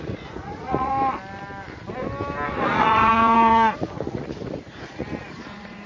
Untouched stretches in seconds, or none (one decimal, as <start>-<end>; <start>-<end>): 0.9-2.5